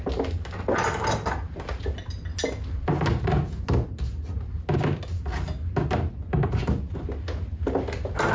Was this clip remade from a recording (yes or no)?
no